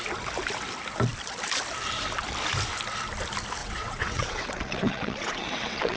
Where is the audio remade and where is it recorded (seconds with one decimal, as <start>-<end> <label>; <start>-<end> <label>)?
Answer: 0.0-3.6 recorded; 3.6-6.0 remade